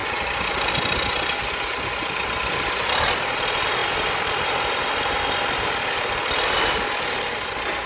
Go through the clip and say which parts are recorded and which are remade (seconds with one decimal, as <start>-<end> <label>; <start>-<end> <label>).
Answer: 0.0-7.9 recorded